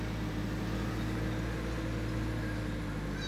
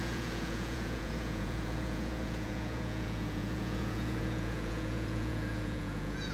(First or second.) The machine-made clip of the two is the second